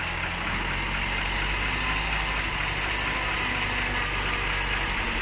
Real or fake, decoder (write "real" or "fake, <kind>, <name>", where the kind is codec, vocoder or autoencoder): real